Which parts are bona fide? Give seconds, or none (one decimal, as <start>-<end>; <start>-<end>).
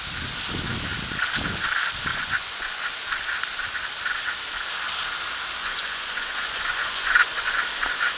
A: 0.0-2.1; 2.8-5.6; 7.6-8.2